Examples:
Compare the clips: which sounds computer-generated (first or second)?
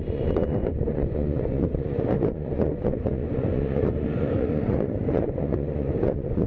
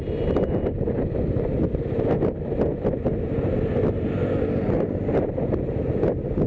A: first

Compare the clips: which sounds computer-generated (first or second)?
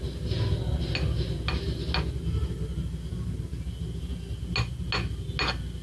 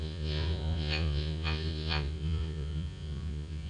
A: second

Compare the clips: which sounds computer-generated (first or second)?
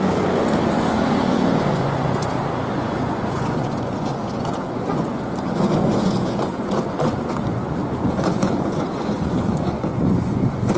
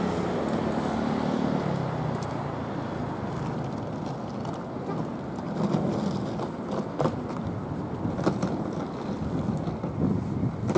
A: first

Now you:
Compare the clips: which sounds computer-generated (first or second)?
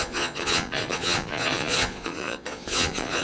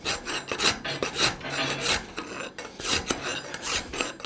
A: first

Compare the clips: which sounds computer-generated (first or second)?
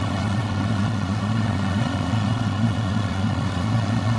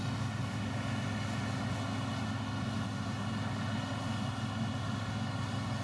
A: first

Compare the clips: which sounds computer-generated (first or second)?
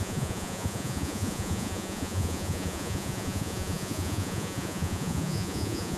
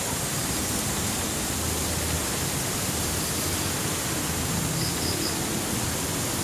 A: first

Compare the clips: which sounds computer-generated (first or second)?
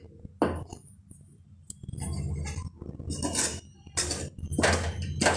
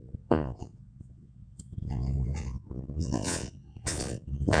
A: second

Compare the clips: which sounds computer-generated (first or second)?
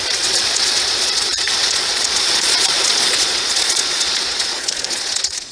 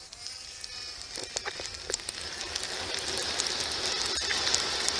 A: first